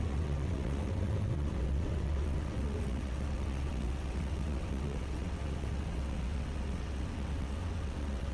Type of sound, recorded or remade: remade